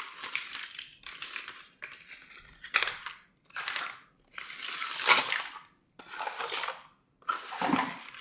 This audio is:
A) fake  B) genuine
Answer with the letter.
A